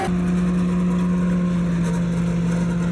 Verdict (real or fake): real